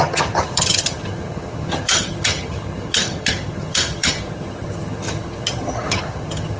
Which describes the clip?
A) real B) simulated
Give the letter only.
B